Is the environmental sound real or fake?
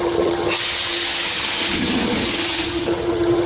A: fake